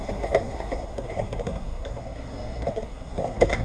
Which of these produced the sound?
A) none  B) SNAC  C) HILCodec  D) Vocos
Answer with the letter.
B